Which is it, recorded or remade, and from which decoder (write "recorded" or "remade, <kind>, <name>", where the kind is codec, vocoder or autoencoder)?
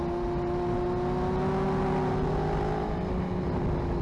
recorded